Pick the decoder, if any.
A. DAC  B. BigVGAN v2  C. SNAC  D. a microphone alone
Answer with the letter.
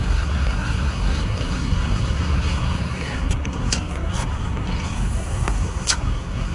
C